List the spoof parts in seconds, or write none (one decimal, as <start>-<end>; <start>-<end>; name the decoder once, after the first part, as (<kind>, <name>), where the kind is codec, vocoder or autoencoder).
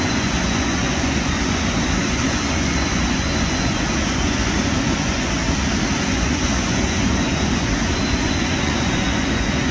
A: 0.0-5.4 (vocoder, Vocos); 6.0-9.7